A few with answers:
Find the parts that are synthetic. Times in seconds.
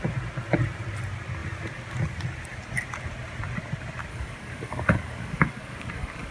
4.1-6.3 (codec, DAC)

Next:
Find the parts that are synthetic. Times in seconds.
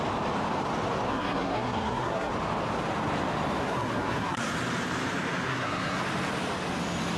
1.1-2.3 (codec, SNAC); 3.6-4.5; 5.5-6.0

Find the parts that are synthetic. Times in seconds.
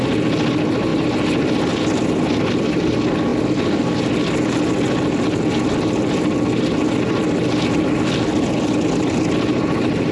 none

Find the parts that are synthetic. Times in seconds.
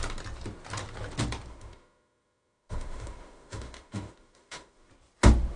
1.5-4.9 (autoencoder, DAC-VAE)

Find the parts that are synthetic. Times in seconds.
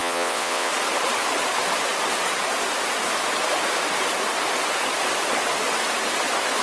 0.0-0.7 (vocoder, WaveNeXt)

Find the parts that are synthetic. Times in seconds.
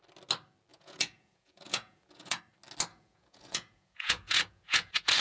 0.7-2.4 (vocoder, Vocos); 2.9-5.2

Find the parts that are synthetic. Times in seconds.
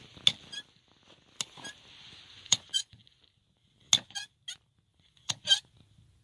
2.3-3.2 (vocoder, Vocos); 4.9-5.4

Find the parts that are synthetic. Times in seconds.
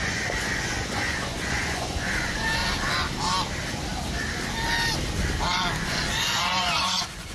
0.0-2.6 (vocoder, Vocos); 5.8-7.3